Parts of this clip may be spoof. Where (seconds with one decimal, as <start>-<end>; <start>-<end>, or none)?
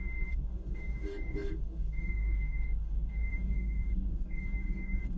0.0-5.2